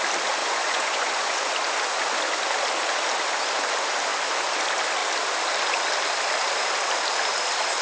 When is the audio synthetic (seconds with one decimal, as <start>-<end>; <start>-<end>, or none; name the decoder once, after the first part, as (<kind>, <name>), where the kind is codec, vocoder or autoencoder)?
0.4-1.5 (vocoder, Vocos)